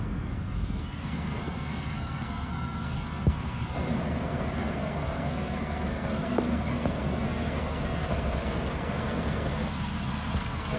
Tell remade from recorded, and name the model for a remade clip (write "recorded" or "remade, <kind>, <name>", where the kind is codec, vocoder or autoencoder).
remade, codec, SNAC